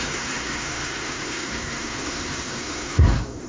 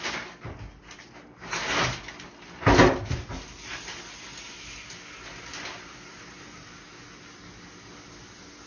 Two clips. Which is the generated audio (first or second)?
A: first